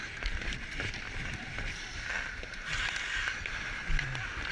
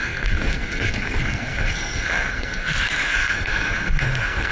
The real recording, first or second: first